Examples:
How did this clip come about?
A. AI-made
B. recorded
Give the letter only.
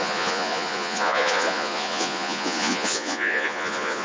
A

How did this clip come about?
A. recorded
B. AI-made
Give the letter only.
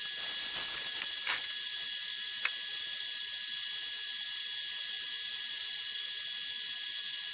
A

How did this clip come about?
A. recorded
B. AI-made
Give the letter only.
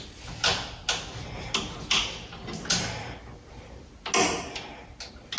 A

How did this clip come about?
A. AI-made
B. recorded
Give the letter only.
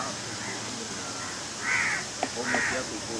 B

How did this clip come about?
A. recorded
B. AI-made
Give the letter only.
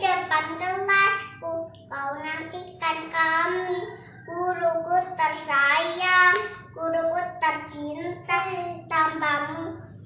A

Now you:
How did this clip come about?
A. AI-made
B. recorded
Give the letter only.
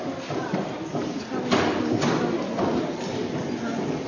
B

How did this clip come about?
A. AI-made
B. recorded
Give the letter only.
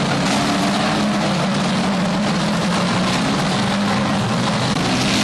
B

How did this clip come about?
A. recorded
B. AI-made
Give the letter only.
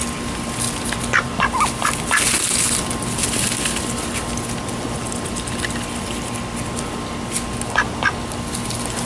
A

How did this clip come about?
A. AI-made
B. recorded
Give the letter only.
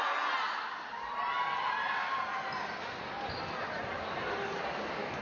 B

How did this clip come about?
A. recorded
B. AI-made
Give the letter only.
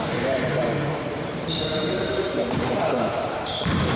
B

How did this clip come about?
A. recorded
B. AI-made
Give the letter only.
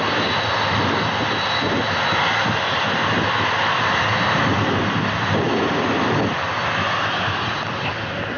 A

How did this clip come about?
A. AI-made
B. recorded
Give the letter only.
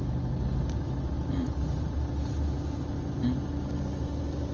B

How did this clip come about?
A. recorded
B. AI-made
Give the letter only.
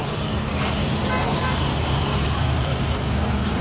B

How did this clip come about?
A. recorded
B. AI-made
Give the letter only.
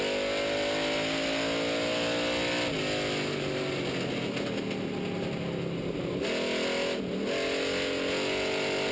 A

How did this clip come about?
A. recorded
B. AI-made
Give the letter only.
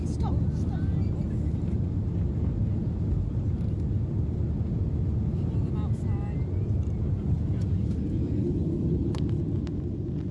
A